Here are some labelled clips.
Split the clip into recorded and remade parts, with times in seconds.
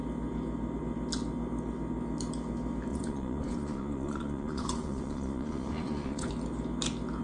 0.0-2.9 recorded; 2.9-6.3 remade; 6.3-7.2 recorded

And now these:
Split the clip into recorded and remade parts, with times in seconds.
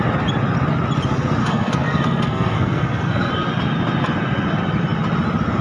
0.0-1.4 recorded; 1.4-3.3 remade; 3.3-5.6 recorded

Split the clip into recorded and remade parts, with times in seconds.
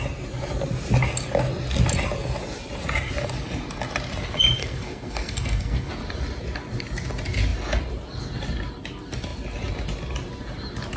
0.0-4.6 recorded; 4.6-5.9 remade; 5.9-11.0 recorded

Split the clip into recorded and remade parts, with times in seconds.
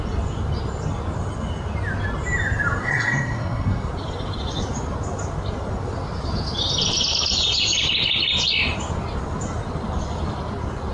0.0-2.8 recorded; 2.8-3.9 remade; 3.9-10.9 recorded